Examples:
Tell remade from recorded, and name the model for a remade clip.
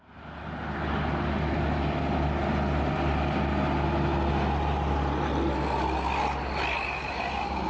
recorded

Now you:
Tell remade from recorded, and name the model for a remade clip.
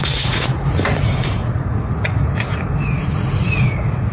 remade, vocoder, Vocos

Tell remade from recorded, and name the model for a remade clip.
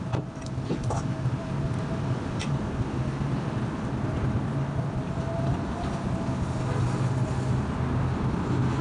recorded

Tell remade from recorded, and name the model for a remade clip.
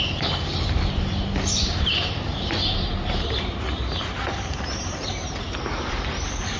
remade, vocoder, BigVGAN v2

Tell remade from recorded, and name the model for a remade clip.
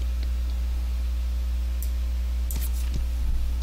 recorded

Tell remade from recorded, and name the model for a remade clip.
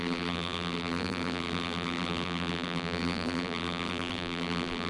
remade, vocoder, BigVGAN v2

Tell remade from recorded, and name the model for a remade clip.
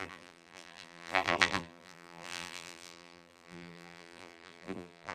remade, vocoder, BigVGAN v2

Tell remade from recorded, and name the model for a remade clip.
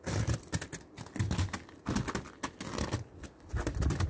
recorded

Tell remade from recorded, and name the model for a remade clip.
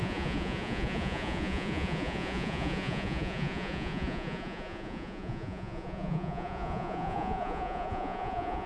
remade, vocoder, Vocos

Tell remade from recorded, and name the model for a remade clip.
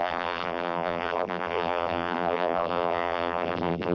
remade, vocoder, BigVGAN v2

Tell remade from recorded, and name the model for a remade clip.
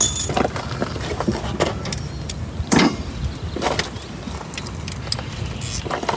recorded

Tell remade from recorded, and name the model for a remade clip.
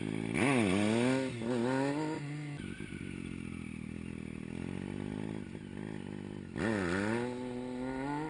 recorded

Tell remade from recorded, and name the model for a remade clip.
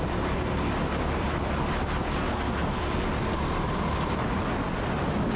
recorded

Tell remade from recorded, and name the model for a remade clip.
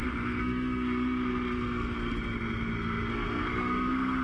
remade, codec, SNAC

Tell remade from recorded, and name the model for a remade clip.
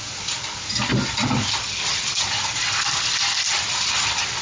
recorded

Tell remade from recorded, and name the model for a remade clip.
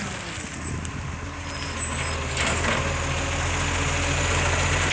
recorded